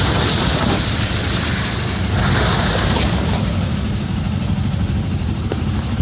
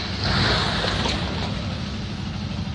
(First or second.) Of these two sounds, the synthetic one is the first